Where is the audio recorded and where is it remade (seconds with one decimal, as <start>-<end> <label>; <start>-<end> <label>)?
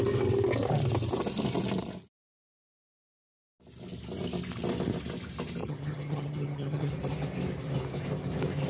0.0-5.6 recorded; 5.6-6.9 remade; 6.9-8.7 recorded